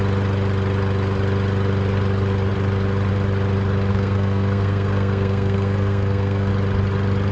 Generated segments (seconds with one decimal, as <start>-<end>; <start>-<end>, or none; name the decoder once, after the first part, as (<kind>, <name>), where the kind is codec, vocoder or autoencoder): 3.9-6.5 (codec, SNAC)